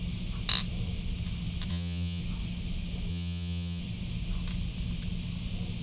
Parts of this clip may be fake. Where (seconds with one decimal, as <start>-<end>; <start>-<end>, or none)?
1.7-2.2; 3.1-3.8